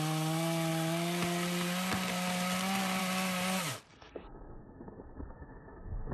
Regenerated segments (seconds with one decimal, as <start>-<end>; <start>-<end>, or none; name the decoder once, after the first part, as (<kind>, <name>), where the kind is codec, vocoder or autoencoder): 3.9-6.1 (codec, SNAC)